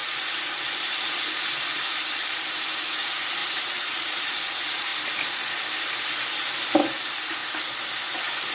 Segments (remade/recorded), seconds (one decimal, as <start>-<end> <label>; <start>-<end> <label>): 0.0-4.9 remade; 4.9-6.2 recorded; 6.2-7.4 remade; 7.4-8.5 recorded